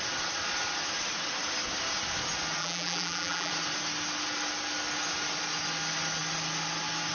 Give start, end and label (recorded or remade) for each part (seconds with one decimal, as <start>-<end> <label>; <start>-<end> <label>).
0.0-2.6 recorded; 2.6-3.5 remade; 3.5-7.1 recorded